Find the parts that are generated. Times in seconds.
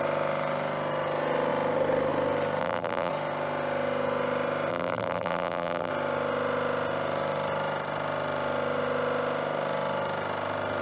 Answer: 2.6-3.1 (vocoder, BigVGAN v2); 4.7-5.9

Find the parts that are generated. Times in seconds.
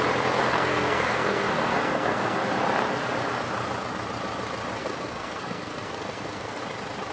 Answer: 0.4-2.5 (codec, SNAC); 4.8-6.6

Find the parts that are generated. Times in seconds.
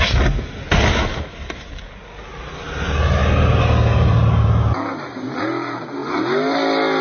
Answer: none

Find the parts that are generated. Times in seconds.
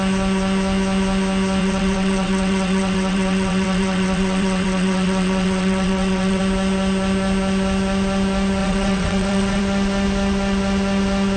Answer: 1.6-6.4 (vocoder, WaveNeXt); 8.6-9.6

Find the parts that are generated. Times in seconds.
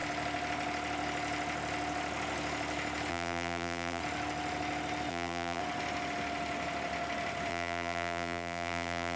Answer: 3.1-4.0 (vocoder, BigVGAN v2); 5.1-5.6; 7.5-9.2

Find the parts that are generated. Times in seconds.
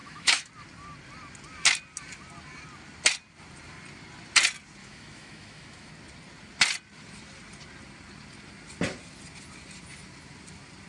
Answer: 0.0-0.5 (autoencoder, DAC-VAE); 4.8-5.9